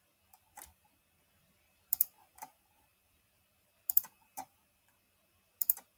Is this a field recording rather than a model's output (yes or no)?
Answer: no